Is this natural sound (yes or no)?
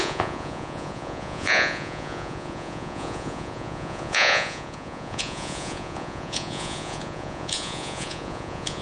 no